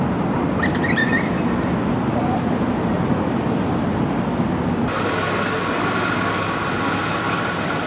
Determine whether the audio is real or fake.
real